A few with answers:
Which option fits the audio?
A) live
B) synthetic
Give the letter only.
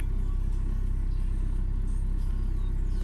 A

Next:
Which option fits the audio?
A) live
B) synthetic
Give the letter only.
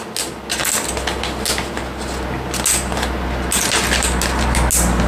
A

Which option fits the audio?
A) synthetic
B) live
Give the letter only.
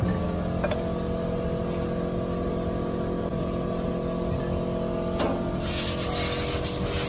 B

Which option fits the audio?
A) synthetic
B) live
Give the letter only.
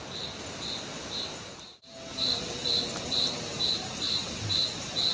B